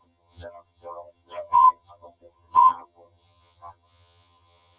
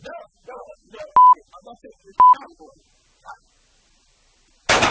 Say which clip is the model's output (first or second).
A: first